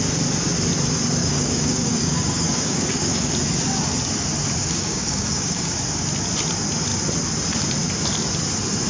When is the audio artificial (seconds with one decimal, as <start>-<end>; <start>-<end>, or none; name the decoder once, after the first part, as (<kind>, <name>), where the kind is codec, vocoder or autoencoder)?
1.2-3.3 (codec, DAC); 4.6-5.8